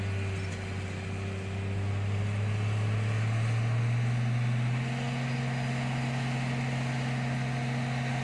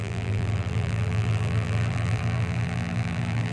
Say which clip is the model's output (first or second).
second